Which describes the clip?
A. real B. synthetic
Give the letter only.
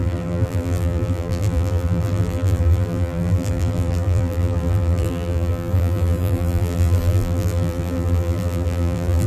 B